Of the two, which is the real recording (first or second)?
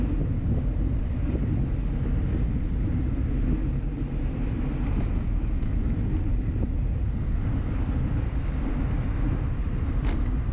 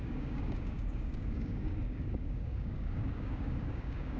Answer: first